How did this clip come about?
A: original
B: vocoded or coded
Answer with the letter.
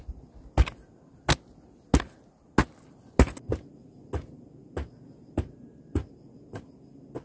A